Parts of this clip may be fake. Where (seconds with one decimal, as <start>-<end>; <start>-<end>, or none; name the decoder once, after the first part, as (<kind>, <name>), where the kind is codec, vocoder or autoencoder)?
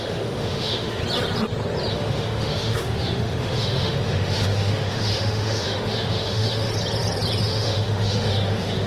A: 0.0-1.0 (autoencoder, DAC-VAE); 1.9-6.7; 7.4-8.9